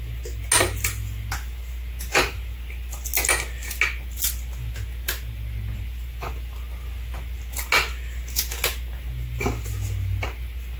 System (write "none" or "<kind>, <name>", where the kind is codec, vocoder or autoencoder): none